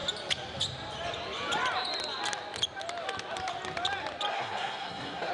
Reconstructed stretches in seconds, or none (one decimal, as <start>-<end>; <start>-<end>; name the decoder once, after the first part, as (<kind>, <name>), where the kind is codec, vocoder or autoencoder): 4.3-5.3 (codec, SNAC)